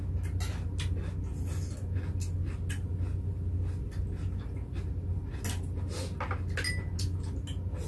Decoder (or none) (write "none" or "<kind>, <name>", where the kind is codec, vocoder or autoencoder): none